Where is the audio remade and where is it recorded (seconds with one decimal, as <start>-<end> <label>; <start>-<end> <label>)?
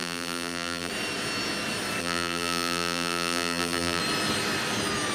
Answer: 0.0-0.9 remade; 0.9-2.0 recorded; 2.0-4.0 remade; 4.0-5.1 recorded